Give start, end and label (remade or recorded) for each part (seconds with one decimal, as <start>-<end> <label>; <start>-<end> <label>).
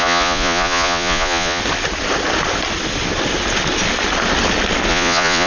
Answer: 0.0-1.6 remade; 1.6-4.9 recorded; 4.9-5.5 remade